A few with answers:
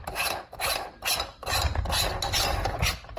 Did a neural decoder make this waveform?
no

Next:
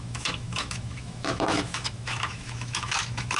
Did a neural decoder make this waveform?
yes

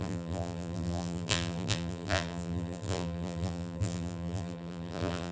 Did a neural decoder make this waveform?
yes